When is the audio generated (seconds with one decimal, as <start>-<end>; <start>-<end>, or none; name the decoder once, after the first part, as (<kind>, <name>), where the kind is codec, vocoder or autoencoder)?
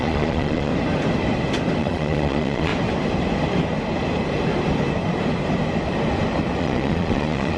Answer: 0.0-0.7 (vocoder, Vocos); 1.8-2.7; 6.6-7.6